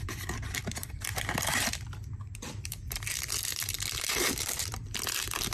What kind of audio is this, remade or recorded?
remade